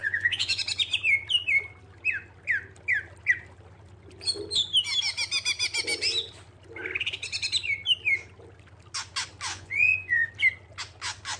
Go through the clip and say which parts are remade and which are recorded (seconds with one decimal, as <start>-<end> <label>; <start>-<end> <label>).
0.0-0.6 remade; 0.6-9.5 recorded; 9.5-10.3 remade; 10.3-11.4 recorded